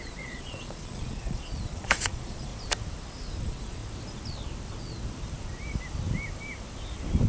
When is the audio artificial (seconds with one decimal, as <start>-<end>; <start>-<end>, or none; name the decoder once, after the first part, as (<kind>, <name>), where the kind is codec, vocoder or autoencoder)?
0.0-2.5 (vocoder, Vocos); 3.4-3.8